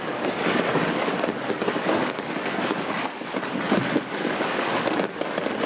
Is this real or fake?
fake